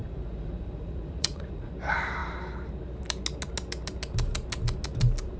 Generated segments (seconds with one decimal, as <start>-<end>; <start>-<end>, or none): 0.0-1.7